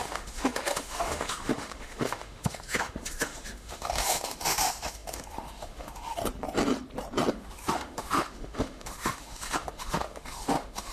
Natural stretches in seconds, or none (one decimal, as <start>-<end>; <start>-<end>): 6.2-7.3